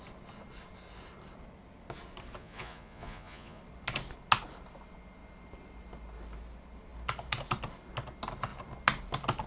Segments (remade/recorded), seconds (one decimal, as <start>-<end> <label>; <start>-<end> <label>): 0.0-2.4 recorded; 2.4-3.6 remade; 3.6-9.5 recorded